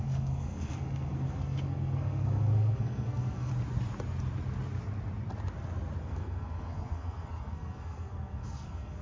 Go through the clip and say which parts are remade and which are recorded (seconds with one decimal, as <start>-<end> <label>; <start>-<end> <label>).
0.0-3.5 remade; 3.5-6.0 recorded; 6.0-9.0 remade